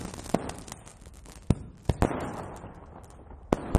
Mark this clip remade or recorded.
recorded